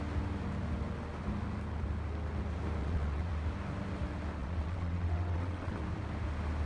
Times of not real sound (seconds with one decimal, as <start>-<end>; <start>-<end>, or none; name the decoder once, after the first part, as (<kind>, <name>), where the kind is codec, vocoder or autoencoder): 2.8-3.3 (vocoder, WaveNeXt); 4.4-5.8